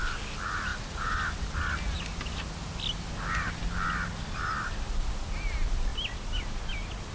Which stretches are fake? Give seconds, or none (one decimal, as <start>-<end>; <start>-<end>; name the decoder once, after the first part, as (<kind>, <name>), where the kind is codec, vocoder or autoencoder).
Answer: none